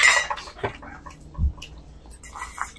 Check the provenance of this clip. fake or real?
real